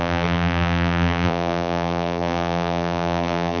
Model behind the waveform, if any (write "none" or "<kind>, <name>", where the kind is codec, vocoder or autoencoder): vocoder, BigVGAN v2